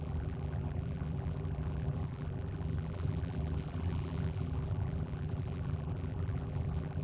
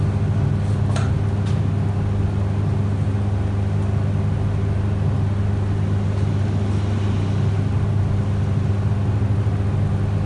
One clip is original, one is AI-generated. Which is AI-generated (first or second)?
first